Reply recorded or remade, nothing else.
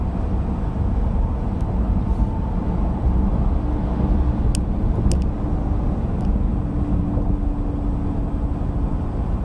recorded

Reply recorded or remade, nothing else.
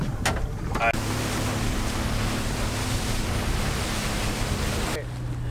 recorded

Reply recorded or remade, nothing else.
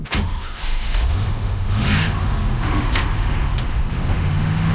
remade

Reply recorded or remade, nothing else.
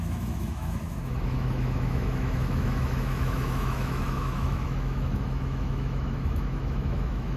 remade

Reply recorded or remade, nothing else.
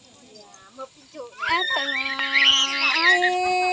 recorded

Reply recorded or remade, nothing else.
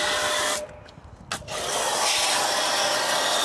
recorded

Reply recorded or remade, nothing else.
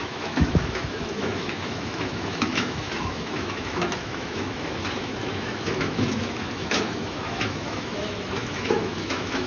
remade